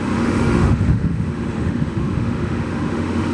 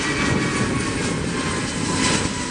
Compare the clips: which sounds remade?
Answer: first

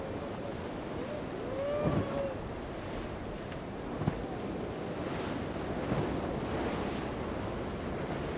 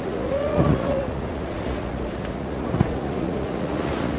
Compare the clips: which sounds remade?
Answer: second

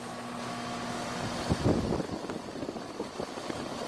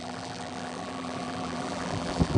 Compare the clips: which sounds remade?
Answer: second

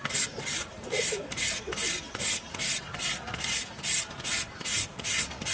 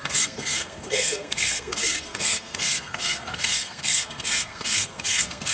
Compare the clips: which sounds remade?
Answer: second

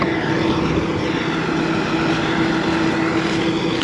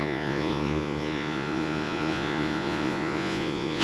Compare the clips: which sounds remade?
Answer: second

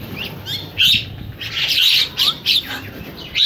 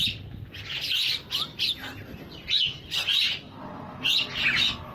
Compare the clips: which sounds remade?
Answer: first